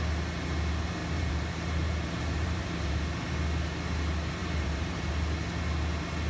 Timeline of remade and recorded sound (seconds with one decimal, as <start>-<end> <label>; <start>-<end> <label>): 0.0-1.0 recorded; 1.0-3.0 remade; 3.0-4.4 recorded; 4.4-5.1 remade; 5.1-6.3 recorded

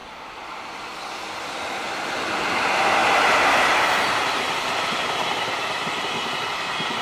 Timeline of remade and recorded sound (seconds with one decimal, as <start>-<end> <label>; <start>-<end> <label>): 0.0-0.5 remade; 0.5-7.0 recorded